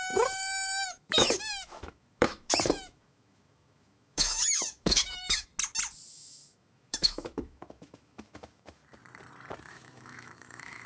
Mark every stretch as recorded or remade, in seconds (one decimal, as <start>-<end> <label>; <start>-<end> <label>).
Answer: 0.0-5.5 remade; 5.5-6.1 recorded; 6.1-8.8 remade; 8.8-9.7 recorded; 9.7-10.9 remade